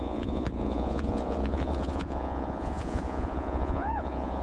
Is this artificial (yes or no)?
yes